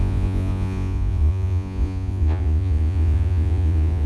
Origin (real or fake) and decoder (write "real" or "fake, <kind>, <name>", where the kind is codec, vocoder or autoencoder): fake, vocoder, Vocos